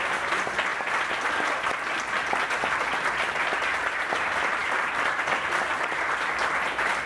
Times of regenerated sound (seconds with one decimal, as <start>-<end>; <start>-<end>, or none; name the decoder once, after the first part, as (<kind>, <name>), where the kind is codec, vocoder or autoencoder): none